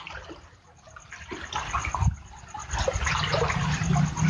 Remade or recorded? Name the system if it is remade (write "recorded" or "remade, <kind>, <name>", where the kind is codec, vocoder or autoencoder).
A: recorded